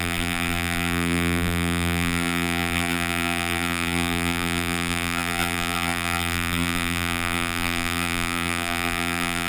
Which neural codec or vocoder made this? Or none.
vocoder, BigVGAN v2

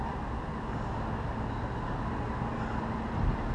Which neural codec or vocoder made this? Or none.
none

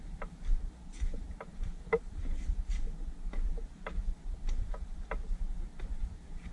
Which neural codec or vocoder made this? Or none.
vocoder, BigVGAN v2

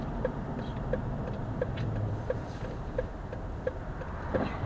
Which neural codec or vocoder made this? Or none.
vocoder, BigVGAN v2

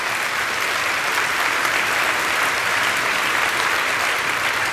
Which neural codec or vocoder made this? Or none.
vocoder, BigVGAN v2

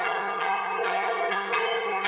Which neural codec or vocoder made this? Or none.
vocoder, HiFi-GAN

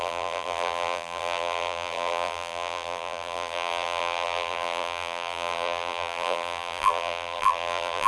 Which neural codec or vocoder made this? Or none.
vocoder, BigVGAN v2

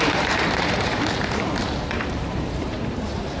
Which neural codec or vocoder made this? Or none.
vocoder, BigVGAN v2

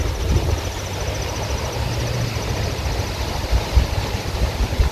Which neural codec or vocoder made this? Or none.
none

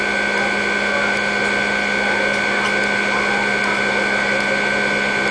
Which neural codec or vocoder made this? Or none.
none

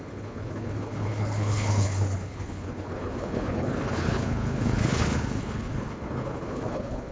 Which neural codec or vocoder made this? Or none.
codec, HILCodec